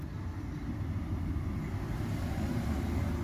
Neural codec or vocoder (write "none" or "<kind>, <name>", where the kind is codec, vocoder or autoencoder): none